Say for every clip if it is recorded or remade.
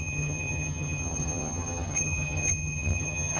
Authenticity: remade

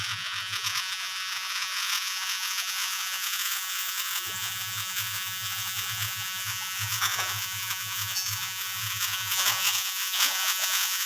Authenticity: remade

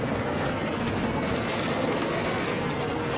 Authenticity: remade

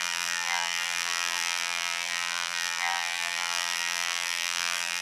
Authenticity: remade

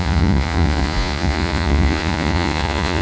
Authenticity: remade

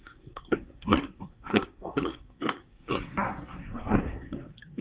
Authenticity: remade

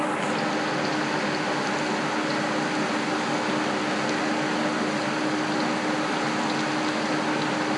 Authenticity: recorded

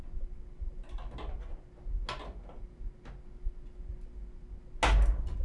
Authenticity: recorded